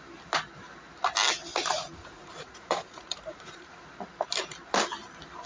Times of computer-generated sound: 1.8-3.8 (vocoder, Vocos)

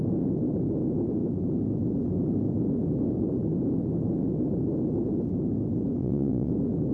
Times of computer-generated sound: 6.0-6.5 (vocoder, WaveNeXt)

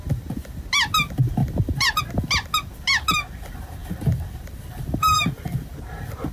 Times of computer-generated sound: 1.4-2.0 (vocoder, BigVGAN v2); 3.8-5.8

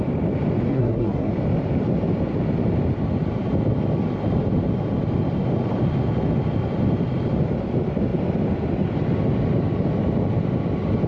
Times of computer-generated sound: 0.7-1.3 (codec, SNAC)

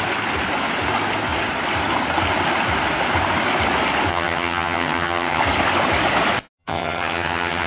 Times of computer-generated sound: 4.1-5.4 (vocoder, HiFi-GAN); 6.6-7.7

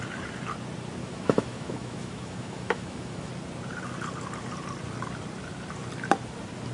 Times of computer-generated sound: 1.0-3.3 (autoencoder, DAC-VAE)

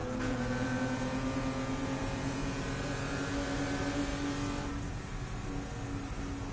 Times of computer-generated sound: 0.0-2.6 (vocoder, Vocos)